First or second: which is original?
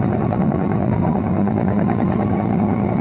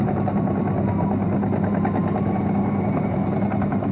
second